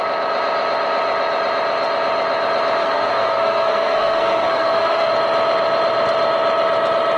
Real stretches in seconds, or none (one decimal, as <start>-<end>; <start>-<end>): 0.0-2.8; 5.1-7.2